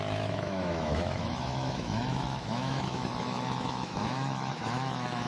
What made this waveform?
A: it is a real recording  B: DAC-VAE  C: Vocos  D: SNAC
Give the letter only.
B